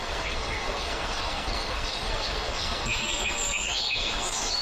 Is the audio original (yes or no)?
no